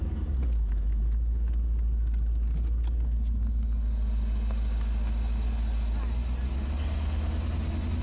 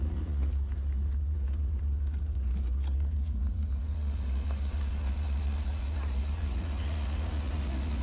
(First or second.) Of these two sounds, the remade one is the second